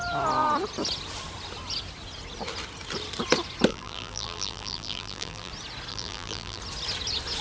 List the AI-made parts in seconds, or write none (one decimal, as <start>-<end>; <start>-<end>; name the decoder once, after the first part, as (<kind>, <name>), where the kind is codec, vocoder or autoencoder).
3.7-5.5 (vocoder, BigVGAN v2); 5.9-6.6